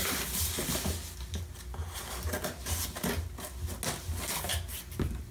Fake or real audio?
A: real